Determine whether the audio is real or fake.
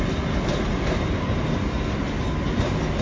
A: real